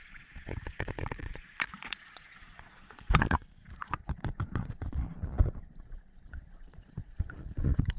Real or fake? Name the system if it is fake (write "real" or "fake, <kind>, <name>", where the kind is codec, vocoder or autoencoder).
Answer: fake, vocoder, Vocos